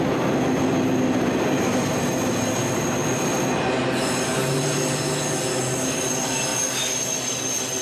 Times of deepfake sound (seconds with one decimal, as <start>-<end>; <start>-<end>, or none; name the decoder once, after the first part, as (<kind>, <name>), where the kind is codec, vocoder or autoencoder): none